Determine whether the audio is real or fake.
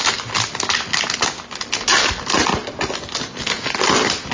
real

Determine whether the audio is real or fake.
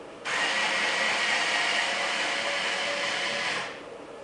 real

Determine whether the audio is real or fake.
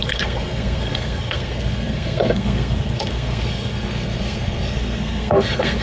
fake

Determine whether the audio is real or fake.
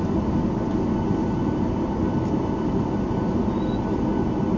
real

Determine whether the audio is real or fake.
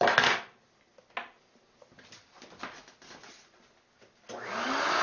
real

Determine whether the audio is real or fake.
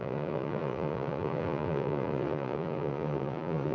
fake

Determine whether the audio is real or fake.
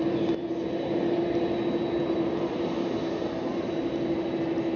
real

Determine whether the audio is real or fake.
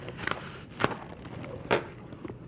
real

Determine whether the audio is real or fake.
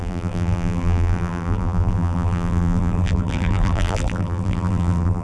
fake